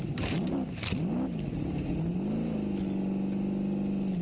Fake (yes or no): no